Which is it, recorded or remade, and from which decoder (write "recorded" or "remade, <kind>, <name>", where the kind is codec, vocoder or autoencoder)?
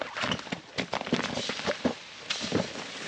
recorded